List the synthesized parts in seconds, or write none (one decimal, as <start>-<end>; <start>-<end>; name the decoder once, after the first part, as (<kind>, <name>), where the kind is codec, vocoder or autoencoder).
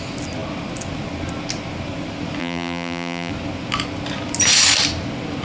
2.4-3.3 (vocoder, BigVGAN v2)